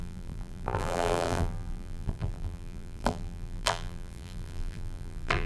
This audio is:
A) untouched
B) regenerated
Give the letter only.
B